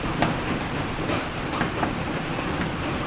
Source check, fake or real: real